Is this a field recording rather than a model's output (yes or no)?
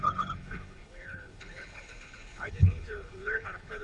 no